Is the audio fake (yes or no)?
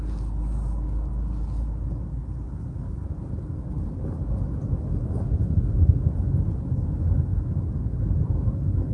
no